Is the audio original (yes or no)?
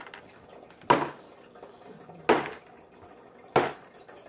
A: yes